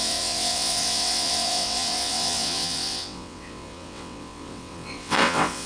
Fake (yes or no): yes